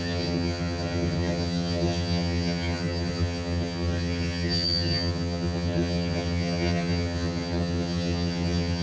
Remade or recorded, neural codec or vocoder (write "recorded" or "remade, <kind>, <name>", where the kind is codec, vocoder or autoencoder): remade, vocoder, HiFi-GAN